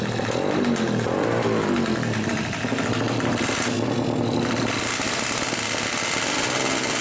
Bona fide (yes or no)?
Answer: yes